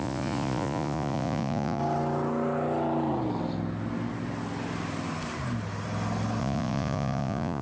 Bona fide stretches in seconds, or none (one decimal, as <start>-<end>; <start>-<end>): 1.8-6.4